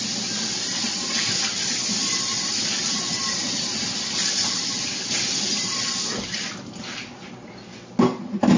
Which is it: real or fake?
real